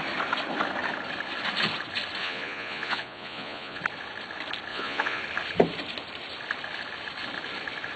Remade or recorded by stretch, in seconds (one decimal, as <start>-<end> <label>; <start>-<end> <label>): 0.0-2.2 recorded; 2.2-3.8 remade; 3.8-4.7 recorded; 4.7-5.2 remade; 5.2-8.0 recorded